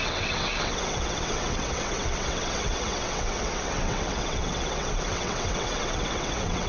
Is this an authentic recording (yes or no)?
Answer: no